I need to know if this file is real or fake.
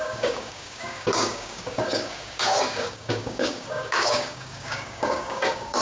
fake